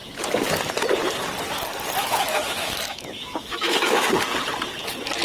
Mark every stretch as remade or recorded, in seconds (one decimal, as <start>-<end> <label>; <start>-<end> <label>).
0.0-2.0 recorded; 2.0-4.1 remade; 4.1-5.2 recorded